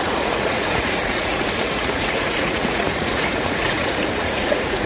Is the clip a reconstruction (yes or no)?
yes